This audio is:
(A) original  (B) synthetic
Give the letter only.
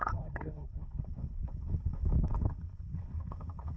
B